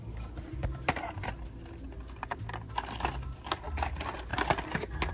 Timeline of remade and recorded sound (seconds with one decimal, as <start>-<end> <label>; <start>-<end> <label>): 0.0-5.1 recorded